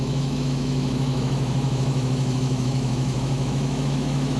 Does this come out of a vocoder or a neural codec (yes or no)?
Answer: yes